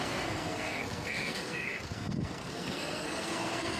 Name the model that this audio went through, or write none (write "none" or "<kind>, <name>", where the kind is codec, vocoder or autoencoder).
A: codec, SNAC